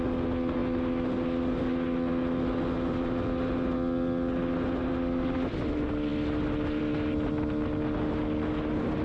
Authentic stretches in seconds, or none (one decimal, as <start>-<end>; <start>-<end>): 0.0-9.0